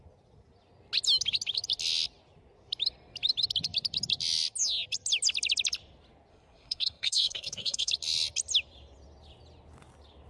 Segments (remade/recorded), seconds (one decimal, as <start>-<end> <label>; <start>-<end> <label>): 0.0-6.3 recorded; 6.3-7.9 remade; 7.9-10.3 recorded